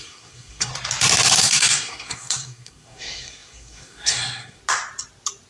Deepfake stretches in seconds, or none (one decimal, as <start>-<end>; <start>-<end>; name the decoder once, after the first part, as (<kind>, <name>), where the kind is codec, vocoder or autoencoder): 0.0-0.7 (codec, SNAC); 1.4-4.6